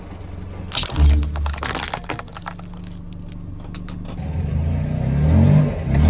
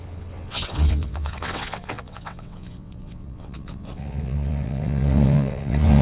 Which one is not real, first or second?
second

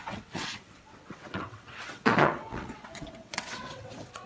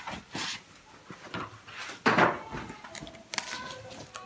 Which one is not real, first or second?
first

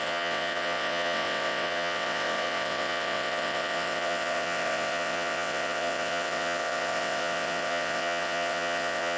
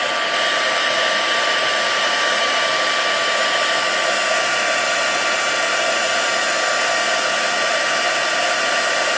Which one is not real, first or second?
first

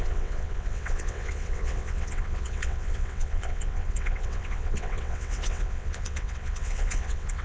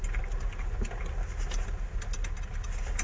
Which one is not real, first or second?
first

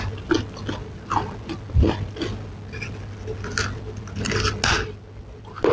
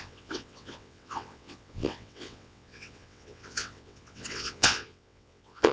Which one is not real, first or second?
second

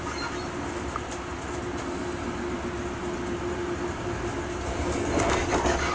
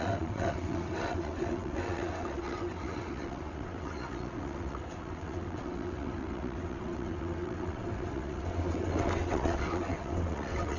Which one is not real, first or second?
second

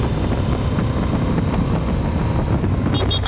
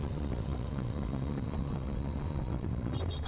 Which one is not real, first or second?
second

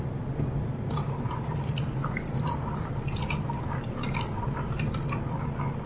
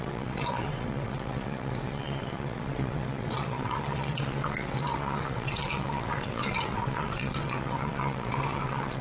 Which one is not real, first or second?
second